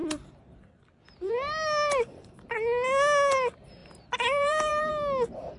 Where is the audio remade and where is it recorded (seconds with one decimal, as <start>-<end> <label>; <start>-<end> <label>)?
0.0-1.3 remade; 1.3-3.8 recorded; 3.8-4.9 remade; 4.9-5.6 recorded